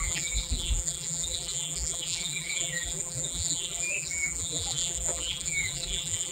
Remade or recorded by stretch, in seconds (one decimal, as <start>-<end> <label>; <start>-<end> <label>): 0.0-6.3 remade

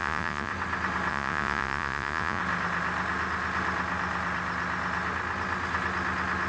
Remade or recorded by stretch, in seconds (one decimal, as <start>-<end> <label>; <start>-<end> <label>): 0.0-0.5 remade; 0.5-1.1 recorded; 1.1-2.4 remade; 2.4-6.5 recorded